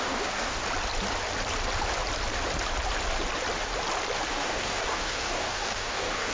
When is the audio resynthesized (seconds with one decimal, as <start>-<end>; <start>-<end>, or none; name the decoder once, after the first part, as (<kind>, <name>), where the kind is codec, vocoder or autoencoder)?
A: 0.0-0.6 (codec, DAC); 4.3-6.3